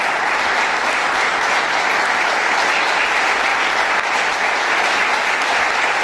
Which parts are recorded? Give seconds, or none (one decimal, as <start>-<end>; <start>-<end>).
0.0-6.0

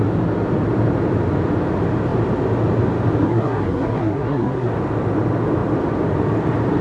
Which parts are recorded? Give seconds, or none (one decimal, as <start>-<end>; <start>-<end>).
0.0-3.2; 4.7-6.8